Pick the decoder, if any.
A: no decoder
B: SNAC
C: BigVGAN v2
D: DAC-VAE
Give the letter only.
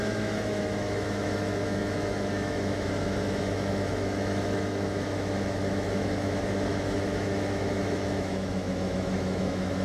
D